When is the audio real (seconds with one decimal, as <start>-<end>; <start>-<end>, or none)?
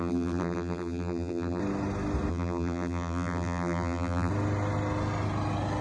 1.6-2.3; 4.3-5.8